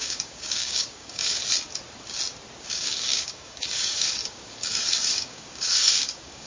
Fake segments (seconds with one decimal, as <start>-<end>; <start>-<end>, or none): 0.0-1.4; 2.6-6.5